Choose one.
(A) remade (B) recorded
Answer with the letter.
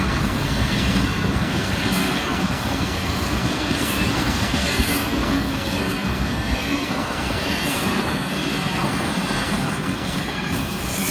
A